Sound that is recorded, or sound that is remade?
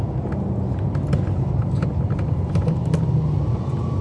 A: recorded